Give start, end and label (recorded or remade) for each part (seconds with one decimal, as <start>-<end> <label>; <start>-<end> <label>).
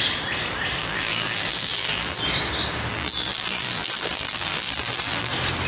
0.0-0.8 recorded; 0.8-2.2 remade; 2.2-2.9 recorded; 2.9-5.3 remade; 5.3-5.7 recorded